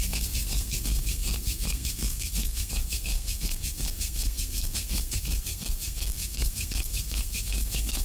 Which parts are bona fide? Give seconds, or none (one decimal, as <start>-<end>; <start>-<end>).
none